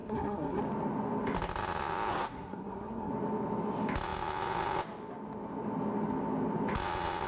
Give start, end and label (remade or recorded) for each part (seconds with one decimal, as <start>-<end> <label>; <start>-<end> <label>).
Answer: 0.0-0.6 remade; 0.6-2.1 recorded; 2.1-3.1 remade; 3.1-7.3 recorded